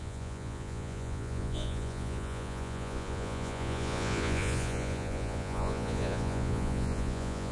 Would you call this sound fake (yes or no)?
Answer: yes